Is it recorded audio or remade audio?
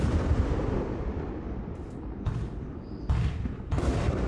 recorded